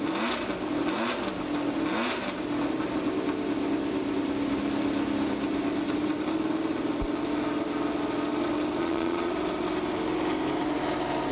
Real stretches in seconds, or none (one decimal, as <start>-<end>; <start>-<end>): 0.0-8.8; 9.3-11.3